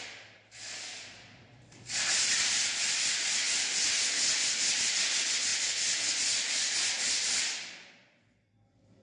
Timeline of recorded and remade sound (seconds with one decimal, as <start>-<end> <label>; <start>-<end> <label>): 0.0-2.6 remade; 2.6-4.7 recorded; 4.7-5.5 remade; 5.5-7.4 recorded; 7.4-9.0 remade